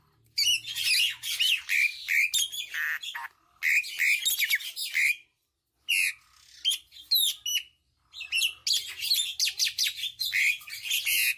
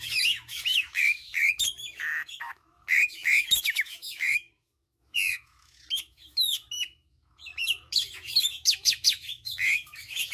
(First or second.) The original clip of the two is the first